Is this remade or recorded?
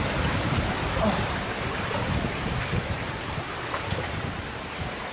remade